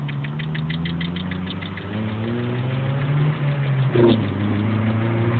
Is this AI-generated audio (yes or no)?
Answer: no